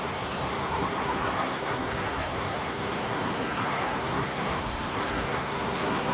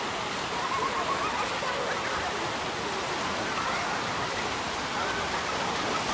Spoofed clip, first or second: first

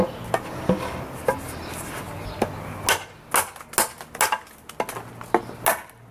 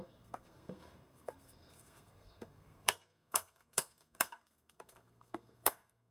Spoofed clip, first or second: second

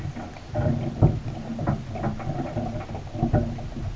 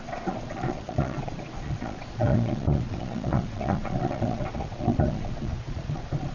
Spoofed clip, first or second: second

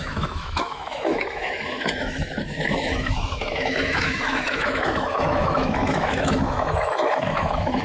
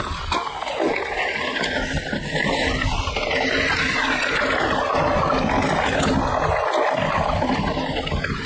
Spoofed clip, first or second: first